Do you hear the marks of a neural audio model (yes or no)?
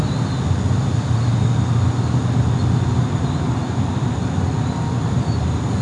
no